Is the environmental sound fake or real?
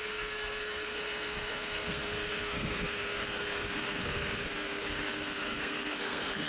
fake